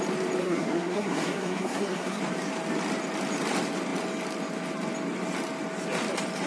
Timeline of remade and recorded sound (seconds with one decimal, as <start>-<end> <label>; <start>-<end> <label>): 0.0-0.4 recorded; 0.4-2.2 remade; 2.2-6.5 recorded